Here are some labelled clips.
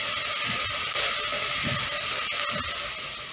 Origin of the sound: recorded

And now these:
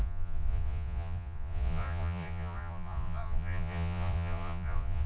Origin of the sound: remade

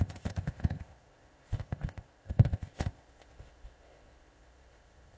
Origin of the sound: remade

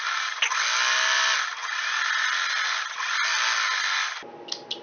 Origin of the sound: recorded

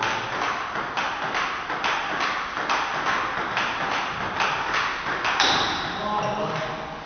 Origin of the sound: recorded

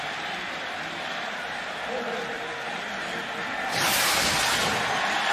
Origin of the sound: recorded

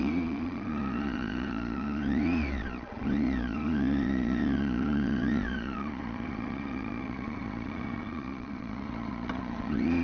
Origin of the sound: remade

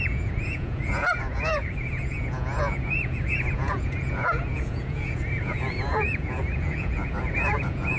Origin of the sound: remade